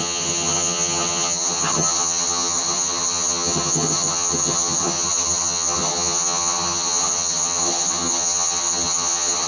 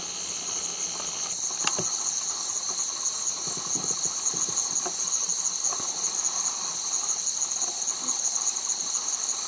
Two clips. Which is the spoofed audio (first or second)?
first